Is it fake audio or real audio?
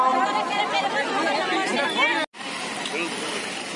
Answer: real